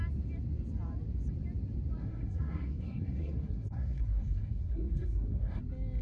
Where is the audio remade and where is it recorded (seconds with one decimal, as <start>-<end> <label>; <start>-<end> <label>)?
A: 0.0-2.0 recorded; 2.0-5.6 remade; 5.6-6.0 recorded